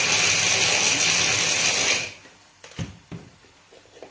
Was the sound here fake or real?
real